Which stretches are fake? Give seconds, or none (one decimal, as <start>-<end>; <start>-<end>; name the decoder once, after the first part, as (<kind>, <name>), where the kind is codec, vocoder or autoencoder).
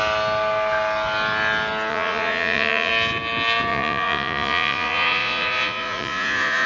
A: 1.9-2.9 (vocoder, Vocos); 3.7-6.7